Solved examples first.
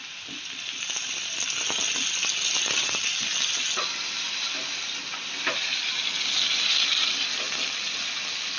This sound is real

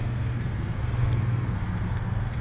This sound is fake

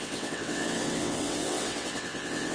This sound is fake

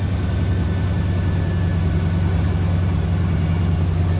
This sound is real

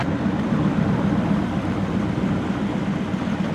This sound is real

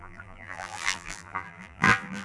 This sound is fake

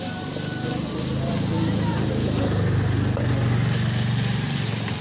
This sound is real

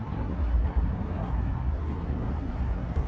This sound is fake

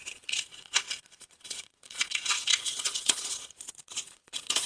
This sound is fake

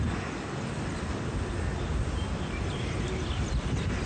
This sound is real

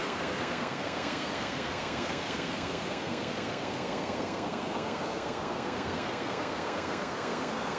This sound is fake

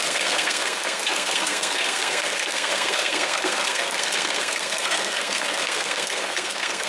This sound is fake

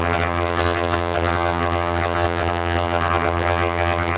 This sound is fake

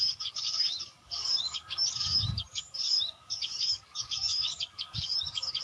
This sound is fake